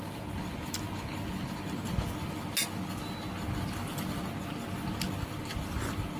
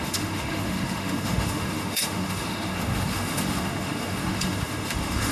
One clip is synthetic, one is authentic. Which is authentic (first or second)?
first